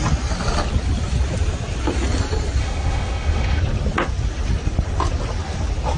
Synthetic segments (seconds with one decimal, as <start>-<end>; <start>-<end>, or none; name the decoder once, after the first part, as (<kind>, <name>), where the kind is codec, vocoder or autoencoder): 2.6-3.6 (autoencoder, DAC-VAE)